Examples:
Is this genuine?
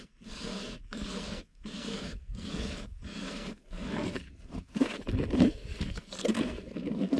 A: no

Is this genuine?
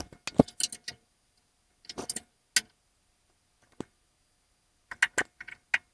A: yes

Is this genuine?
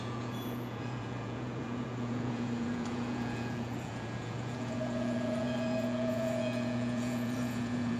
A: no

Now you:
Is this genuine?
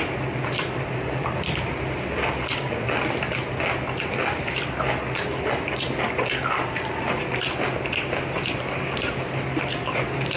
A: yes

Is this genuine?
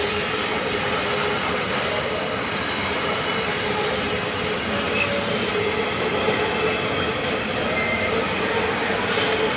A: yes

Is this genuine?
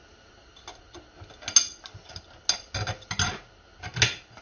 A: yes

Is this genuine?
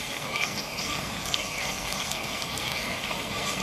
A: no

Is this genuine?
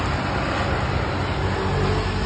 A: yes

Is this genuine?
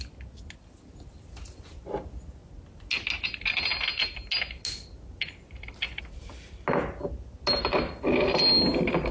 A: yes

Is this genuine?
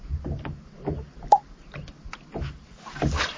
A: yes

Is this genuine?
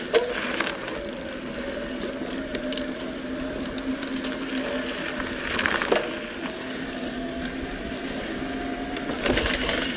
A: yes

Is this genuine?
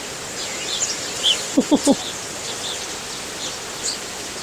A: yes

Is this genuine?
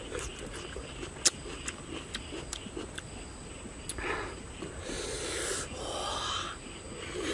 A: yes